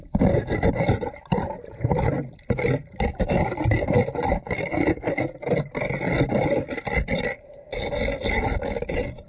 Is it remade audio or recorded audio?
recorded